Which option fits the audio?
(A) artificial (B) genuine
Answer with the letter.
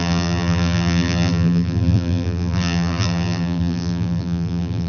A